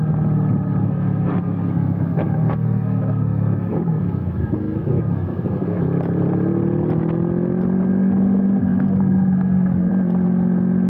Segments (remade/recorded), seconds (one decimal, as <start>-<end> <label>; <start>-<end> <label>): 0.0-0.8 recorded; 0.8-5.8 remade; 5.8-8.6 recorded; 8.6-9.9 remade; 9.9-10.9 recorded